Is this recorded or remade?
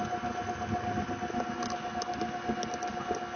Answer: recorded